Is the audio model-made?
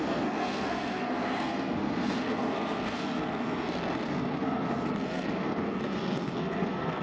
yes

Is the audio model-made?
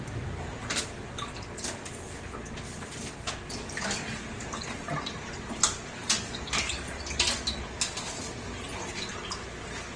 no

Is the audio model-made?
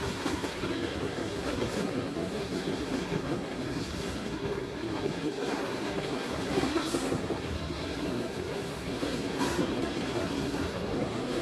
yes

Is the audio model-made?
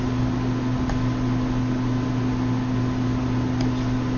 no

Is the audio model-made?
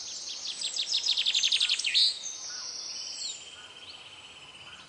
no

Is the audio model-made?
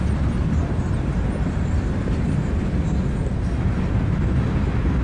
no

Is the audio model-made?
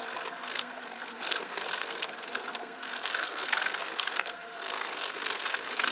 yes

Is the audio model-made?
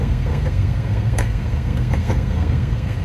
yes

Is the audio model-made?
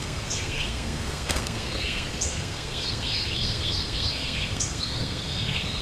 yes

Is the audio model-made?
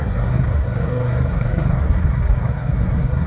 yes